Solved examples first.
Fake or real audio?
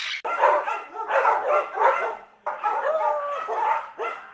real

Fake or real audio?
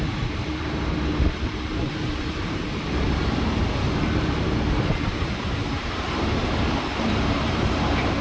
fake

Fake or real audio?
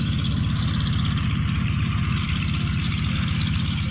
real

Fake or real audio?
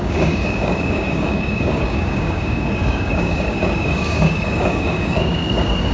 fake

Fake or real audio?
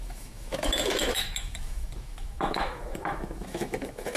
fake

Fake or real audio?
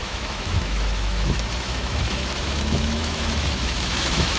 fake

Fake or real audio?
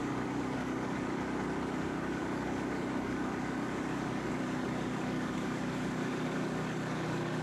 fake